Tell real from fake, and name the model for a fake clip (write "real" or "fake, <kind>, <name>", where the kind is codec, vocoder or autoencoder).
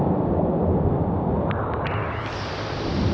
real